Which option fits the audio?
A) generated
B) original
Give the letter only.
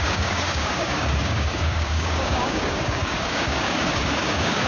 A